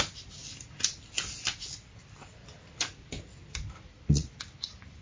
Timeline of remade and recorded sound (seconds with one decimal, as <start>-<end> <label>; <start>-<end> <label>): 0.0-3.9 recorded; 3.9-4.4 remade; 4.4-5.0 recorded